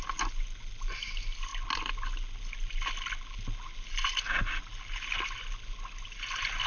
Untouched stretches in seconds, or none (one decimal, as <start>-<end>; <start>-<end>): 0.0-6.7

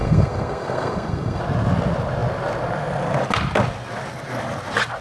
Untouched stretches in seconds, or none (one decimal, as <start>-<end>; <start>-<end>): 1.4-5.0

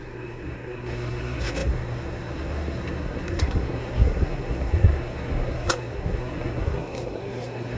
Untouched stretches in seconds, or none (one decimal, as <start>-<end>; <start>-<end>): none

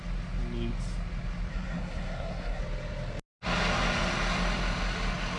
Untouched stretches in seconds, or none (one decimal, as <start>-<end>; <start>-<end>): 0.0-1.5; 2.6-5.4

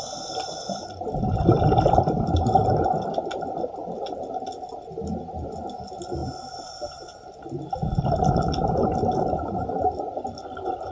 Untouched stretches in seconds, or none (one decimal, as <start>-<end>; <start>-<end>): 0.0-10.9

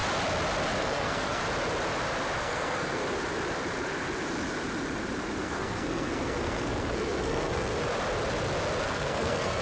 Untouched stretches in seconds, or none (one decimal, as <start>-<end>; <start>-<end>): 0.0-0.8; 1.4-2.4; 3.0-5.4; 7.7-8.8

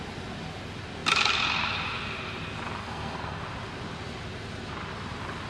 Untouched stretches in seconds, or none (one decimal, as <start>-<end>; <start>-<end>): 0.0-2.8; 3.4-5.5

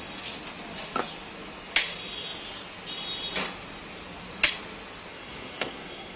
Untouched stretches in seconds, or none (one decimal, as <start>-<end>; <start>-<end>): 0.0-5.1